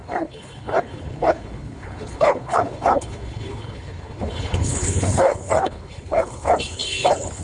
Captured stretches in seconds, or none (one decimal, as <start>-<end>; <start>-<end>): none